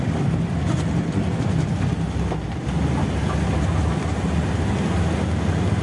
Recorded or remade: recorded